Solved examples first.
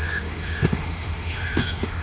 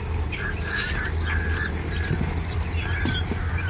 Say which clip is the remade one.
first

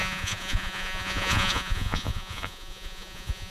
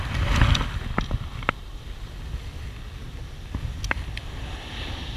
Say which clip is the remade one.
first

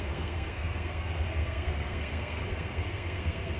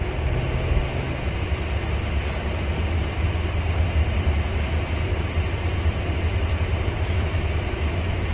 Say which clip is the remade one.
first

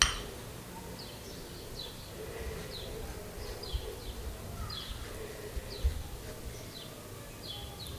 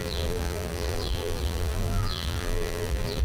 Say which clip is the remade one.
second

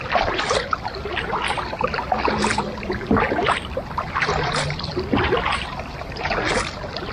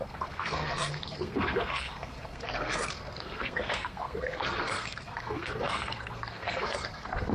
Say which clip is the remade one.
second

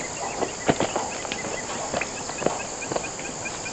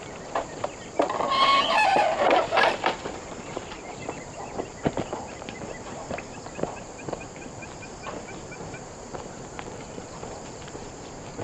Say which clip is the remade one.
second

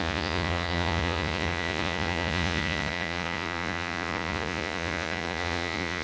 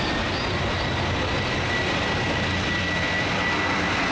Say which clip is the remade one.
first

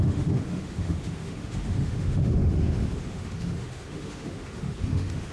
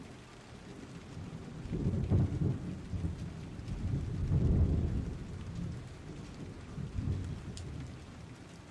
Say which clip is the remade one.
first